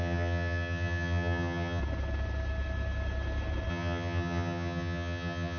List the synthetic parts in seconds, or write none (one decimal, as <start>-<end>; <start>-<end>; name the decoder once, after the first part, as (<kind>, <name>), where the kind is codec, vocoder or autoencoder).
0.0-1.8 (vocoder, HiFi-GAN); 3.7-5.6